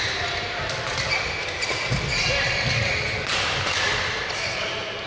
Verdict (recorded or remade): recorded